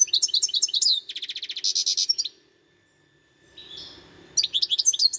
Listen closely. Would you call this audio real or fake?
real